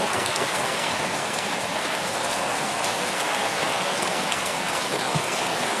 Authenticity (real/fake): fake